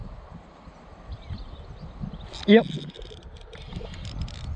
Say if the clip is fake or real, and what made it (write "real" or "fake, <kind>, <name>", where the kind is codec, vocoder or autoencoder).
real